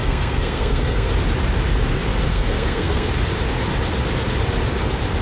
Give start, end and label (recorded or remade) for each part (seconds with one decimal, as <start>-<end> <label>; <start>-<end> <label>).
0.0-1.1 remade; 1.1-2.3 recorded; 2.3-3.1 remade; 3.1-5.2 recorded